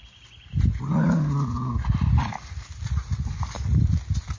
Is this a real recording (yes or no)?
yes